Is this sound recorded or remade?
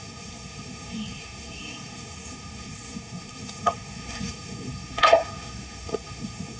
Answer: remade